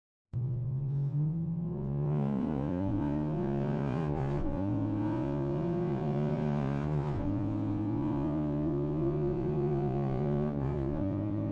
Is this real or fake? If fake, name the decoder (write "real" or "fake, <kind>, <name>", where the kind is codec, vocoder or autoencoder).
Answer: fake, vocoder, Vocos